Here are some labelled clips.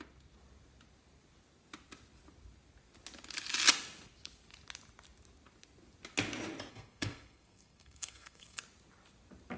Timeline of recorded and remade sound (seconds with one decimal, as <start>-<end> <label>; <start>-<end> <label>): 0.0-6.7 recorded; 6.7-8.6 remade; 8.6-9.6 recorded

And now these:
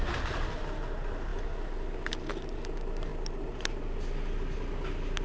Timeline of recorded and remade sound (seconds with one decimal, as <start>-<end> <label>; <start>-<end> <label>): 0.0-5.2 recorded

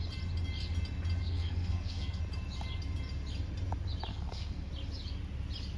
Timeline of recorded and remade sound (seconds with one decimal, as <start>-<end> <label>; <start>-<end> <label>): 0.0-1.2 recorded; 1.2-2.2 remade; 2.2-4.1 recorded; 4.1-4.7 remade; 4.7-5.8 recorded